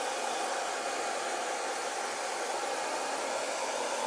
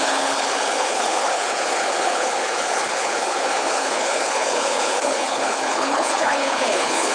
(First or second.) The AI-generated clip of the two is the second